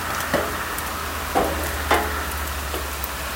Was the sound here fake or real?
real